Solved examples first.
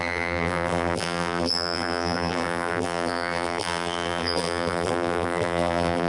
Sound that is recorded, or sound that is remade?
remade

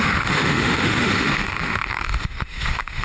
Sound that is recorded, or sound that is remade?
remade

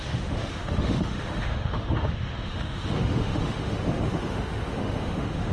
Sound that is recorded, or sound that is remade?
remade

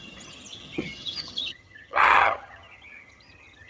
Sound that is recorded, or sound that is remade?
remade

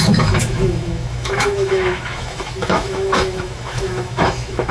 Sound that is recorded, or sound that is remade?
remade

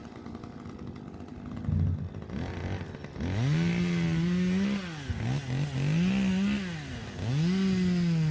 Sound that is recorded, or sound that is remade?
recorded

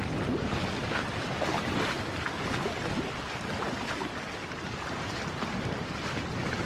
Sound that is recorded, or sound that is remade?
recorded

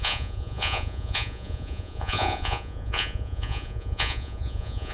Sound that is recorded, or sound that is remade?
remade